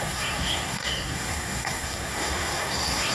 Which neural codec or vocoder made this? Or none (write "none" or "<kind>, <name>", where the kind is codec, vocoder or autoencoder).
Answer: codec, SNAC